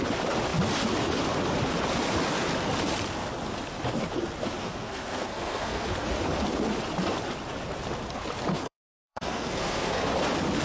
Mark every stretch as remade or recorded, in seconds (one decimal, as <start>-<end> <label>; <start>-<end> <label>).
0.0-4.6 recorded; 4.6-5.9 remade; 5.9-8.5 recorded; 8.5-10.1 remade; 10.1-10.6 recorded